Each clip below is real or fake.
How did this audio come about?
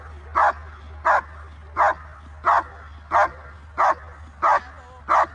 real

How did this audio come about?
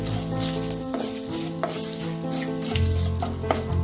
real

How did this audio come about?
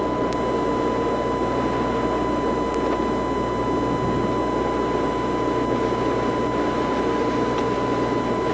real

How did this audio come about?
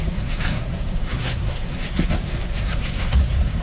fake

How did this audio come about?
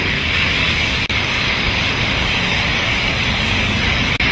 fake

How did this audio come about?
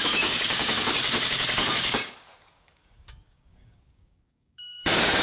fake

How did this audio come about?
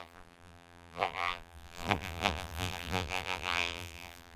fake